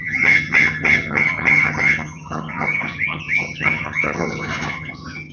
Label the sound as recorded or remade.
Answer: remade